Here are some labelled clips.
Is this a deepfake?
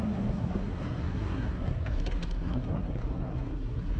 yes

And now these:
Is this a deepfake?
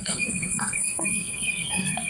yes